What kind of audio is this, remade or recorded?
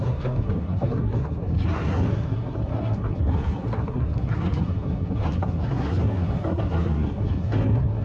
remade